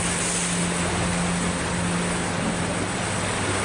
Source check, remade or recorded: recorded